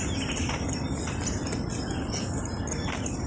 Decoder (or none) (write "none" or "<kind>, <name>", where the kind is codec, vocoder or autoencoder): none